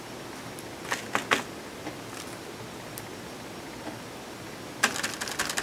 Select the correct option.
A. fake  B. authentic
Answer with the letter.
B